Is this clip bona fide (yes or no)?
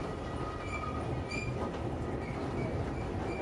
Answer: yes